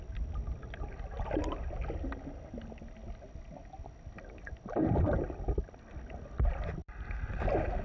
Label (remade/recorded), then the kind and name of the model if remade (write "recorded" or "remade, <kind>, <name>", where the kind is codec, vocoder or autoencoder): recorded